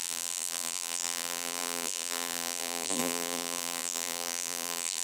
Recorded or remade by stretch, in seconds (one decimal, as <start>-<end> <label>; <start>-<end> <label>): 0.0-5.0 remade